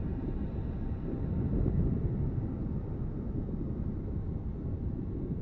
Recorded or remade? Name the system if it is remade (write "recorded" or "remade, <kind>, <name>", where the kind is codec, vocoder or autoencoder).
recorded